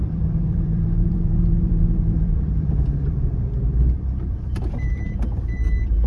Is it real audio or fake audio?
fake